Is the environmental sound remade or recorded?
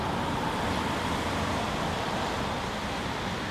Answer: recorded